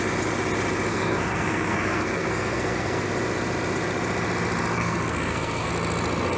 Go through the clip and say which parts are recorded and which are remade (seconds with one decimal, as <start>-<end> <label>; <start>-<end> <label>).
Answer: 0.0-0.9 recorded; 0.9-3.1 remade; 3.1-4.7 recorded; 4.7-5.7 remade; 5.7-6.4 recorded